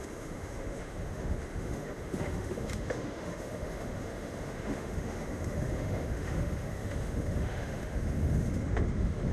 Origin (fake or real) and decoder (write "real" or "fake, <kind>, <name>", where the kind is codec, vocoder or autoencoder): fake, autoencoder, DAC-VAE